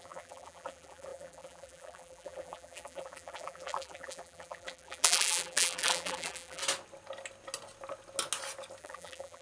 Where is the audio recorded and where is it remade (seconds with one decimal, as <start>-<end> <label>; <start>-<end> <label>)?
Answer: 0.0-6.6 remade; 6.6-8.8 recorded; 8.8-9.4 remade

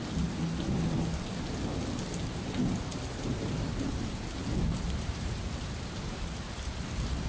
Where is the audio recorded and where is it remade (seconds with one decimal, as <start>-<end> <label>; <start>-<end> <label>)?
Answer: 0.0-2.9 recorded; 2.9-7.3 remade